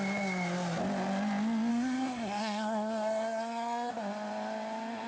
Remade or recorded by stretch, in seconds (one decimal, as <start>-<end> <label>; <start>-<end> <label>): 0.0-1.7 recorded; 1.7-3.9 remade; 3.9-5.1 recorded